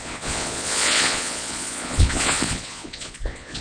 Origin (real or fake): fake